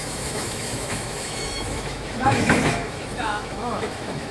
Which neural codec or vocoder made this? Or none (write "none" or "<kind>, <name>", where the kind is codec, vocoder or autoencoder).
autoencoder, DAC-VAE